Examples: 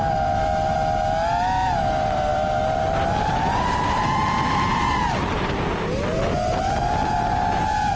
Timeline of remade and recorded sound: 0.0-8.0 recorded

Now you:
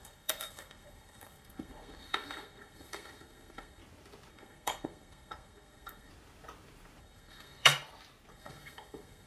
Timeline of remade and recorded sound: 0.0-3.8 remade; 3.8-4.3 recorded; 4.3-6.1 remade; 6.1-7.0 recorded; 7.0-7.7 remade; 7.7-8.3 recorded; 8.3-9.3 remade

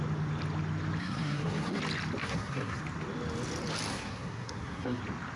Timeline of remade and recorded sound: 0.0-1.0 recorded; 1.0-1.8 remade; 1.8-2.2 recorded; 2.2-2.8 remade; 2.8-3.9 recorded; 3.9-5.0 remade; 5.0-5.4 recorded

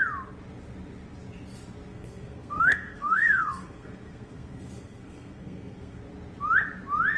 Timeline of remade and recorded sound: 0.0-1.9 recorded; 1.9-6.0 remade; 6.0-7.2 recorded

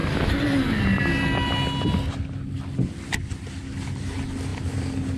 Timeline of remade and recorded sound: 0.0-5.2 recorded